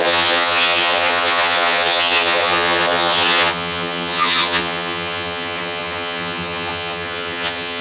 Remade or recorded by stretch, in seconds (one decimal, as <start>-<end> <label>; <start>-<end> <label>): 0.0-7.8 remade